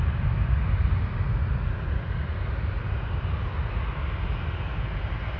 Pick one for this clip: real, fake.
real